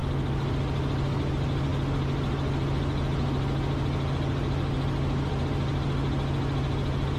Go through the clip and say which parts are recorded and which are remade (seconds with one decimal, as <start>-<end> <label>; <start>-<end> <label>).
0.0-7.2 recorded